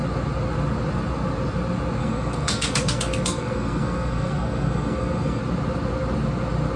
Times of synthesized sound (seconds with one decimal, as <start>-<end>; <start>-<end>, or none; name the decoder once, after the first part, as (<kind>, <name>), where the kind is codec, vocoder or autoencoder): 2.0-5.4 (codec, SNAC)